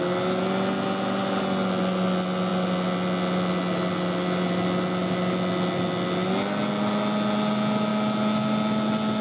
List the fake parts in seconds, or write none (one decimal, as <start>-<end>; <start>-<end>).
none